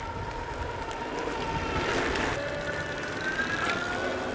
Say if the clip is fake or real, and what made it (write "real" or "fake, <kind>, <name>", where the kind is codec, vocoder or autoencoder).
real